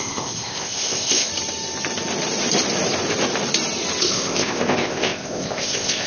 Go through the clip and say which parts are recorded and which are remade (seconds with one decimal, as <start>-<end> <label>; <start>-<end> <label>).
0.0-1.3 remade; 1.3-4.0 recorded; 4.0-6.1 remade